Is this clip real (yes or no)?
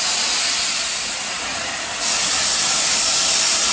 yes